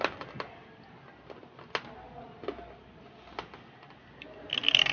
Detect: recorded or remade recorded